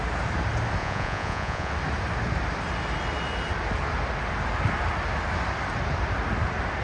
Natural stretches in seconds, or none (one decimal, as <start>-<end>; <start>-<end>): 0.0-0.8; 1.7-6.8